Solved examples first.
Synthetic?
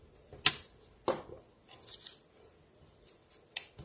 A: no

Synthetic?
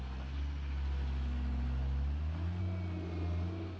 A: no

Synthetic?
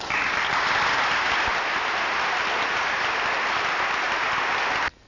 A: no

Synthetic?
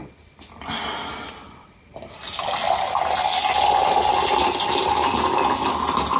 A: no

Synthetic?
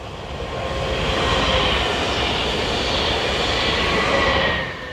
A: no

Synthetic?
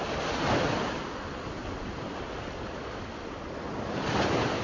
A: no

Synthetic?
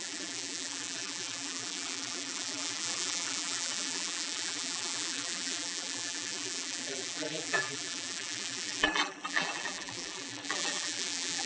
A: yes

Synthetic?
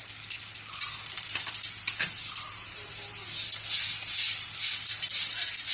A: no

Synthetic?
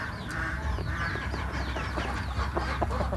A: yes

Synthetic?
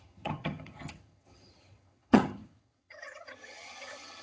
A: yes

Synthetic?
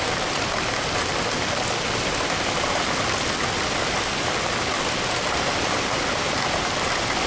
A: no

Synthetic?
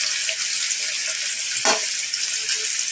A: no